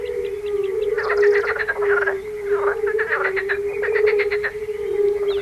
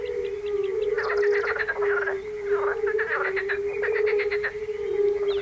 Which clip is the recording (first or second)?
second